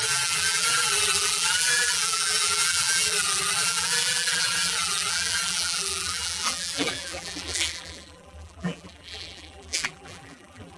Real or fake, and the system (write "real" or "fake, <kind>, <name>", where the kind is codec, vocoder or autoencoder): fake, vocoder, BigVGAN v2